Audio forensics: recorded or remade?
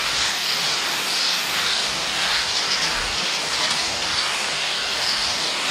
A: remade